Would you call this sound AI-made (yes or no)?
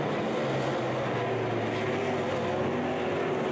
no